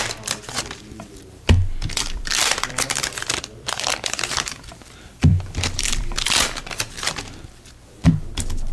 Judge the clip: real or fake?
fake